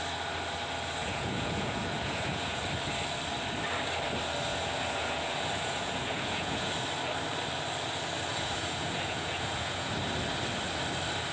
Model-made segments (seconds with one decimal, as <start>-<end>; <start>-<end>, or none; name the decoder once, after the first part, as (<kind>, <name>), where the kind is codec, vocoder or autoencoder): 1.0-2.6 (vocoder, Vocos); 4.5-6.7; 8.3-9.9